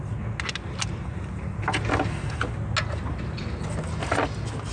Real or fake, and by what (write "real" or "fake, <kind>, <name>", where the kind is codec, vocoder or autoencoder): real